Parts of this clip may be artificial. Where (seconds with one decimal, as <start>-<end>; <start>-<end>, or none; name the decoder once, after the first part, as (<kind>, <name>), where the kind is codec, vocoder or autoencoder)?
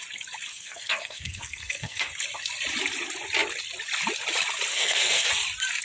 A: 0.5-2.1 (codec, SNAC); 4.7-5.3